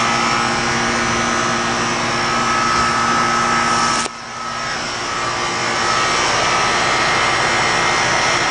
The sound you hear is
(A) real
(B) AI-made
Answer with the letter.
A